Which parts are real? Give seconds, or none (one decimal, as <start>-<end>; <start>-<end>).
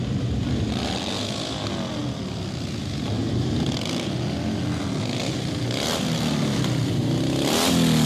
0.0-8.1